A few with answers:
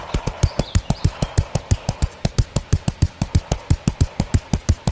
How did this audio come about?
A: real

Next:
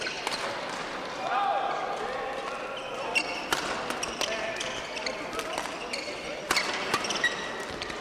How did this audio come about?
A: real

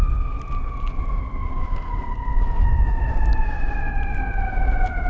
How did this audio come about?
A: real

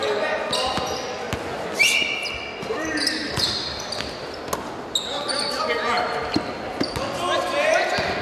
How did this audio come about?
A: real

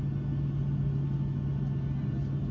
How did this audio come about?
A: real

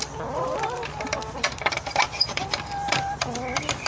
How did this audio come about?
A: fake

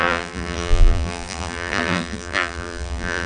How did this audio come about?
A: fake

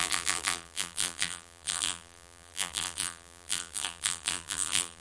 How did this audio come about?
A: fake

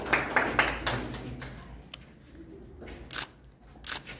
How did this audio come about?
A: real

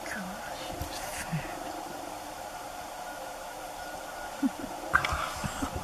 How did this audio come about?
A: fake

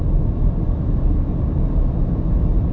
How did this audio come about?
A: real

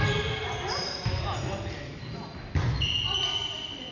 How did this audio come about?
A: real